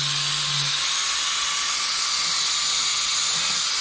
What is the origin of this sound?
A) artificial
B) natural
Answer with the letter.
B